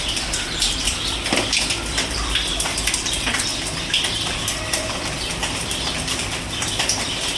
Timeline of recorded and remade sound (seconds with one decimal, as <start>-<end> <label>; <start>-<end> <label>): 0.0-3.5 remade; 3.5-4.6 recorded; 4.6-7.4 remade

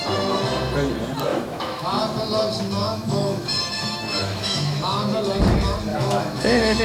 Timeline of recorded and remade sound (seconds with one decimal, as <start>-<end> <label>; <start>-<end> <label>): 0.0-1.3 recorded; 1.3-1.9 remade; 1.9-2.8 recorded; 2.8-5.1 remade; 5.1-5.9 recorded; 5.9-6.8 remade

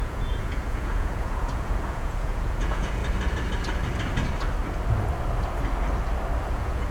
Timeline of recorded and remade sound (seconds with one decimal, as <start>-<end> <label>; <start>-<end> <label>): 0.0-3.0 remade; 3.0-6.5 recorded; 6.5-6.9 remade

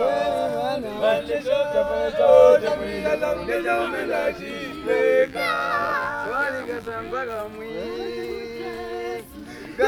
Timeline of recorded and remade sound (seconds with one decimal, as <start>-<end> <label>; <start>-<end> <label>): 0.0-5.2 recorded; 5.2-7.4 remade; 7.4-9.9 recorded